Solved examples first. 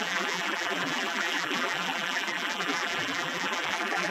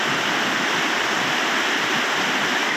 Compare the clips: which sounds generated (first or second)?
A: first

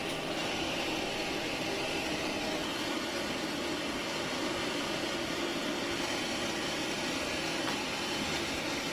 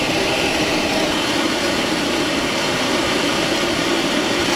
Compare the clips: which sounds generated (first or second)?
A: second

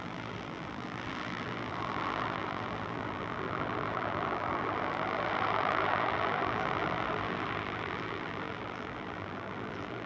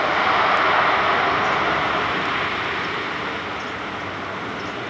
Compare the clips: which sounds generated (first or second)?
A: first